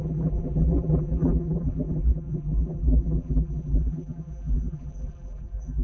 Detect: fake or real fake